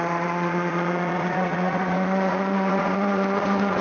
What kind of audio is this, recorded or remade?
remade